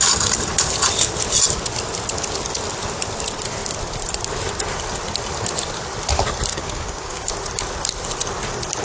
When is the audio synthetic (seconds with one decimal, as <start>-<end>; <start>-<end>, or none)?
6.5-7.3